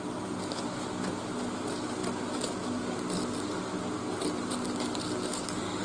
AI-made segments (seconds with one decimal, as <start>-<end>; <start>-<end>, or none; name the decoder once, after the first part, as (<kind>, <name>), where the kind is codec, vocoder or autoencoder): none